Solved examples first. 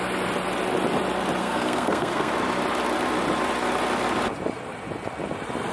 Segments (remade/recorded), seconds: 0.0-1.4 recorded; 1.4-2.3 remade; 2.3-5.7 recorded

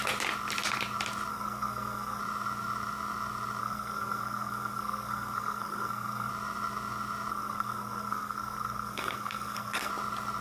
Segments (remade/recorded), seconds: 0.0-1.3 recorded; 1.3-2.2 remade; 2.2-3.6 recorded; 3.6-6.3 remade; 6.3-7.3 recorded; 7.3-9.9 remade; 9.9-10.4 recorded

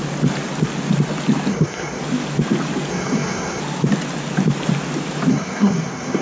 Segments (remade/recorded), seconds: 0.0-1.5 recorded; 1.5-2.0 remade; 2.0-2.9 recorded; 2.9-3.6 remade; 3.6-5.3 recorded; 5.3-6.2 remade

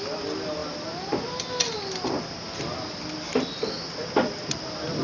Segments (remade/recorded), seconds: 0.0-5.0 recorded

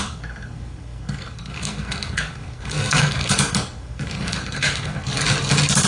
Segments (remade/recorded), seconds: 0.0-5.1 remade; 5.1-5.9 recorded

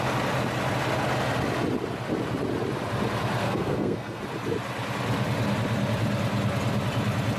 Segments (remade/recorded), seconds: 0.0-3.4 recorded; 3.4-4.2 remade; 4.2-7.4 recorded

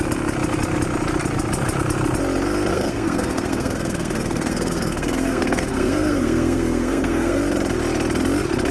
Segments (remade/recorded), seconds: 0.0-2.7 recorded; 2.7-7.4 remade; 7.4-8.7 recorded

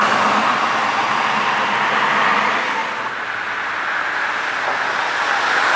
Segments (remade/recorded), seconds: 0.0-5.8 recorded